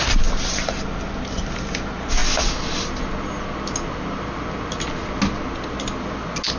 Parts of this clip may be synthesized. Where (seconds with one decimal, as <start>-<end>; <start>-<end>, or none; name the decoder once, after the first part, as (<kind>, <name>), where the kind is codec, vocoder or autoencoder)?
none